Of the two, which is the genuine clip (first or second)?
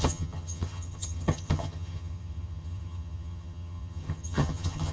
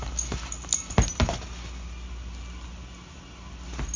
second